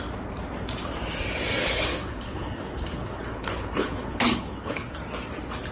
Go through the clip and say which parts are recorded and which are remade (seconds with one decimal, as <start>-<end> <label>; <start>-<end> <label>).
0.0-1.6 recorded; 1.6-5.0 remade; 5.0-5.7 recorded